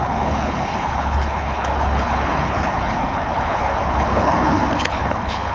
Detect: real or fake fake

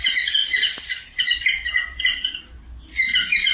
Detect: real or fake real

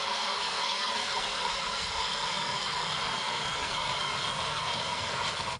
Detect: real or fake fake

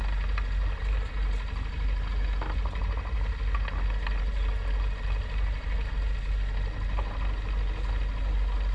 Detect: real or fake real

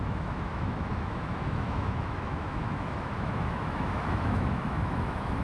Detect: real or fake fake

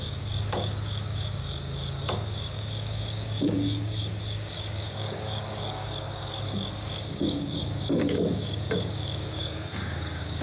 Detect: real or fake fake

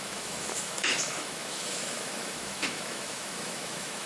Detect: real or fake fake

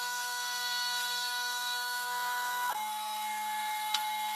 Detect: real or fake fake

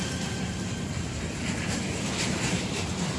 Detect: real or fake real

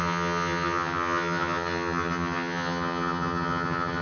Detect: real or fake fake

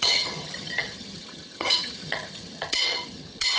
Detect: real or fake fake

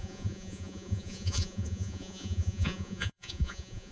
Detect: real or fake fake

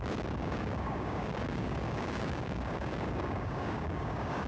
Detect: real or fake fake